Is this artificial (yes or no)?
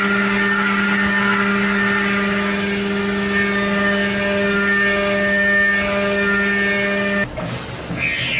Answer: no